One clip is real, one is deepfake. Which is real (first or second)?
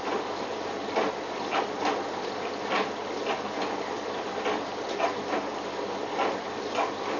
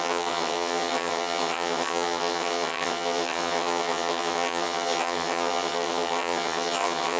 first